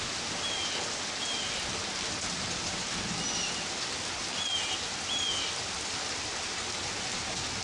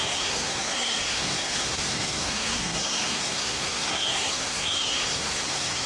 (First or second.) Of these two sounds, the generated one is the second